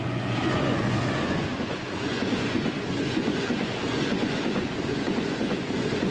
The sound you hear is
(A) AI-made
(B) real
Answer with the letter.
A